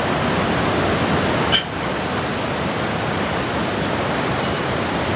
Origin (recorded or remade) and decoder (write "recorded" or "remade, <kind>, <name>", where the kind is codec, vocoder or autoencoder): recorded